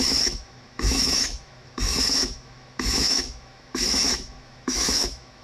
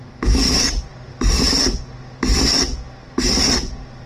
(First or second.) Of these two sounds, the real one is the second